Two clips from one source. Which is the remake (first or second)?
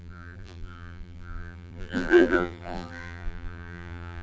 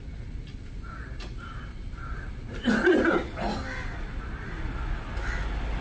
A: first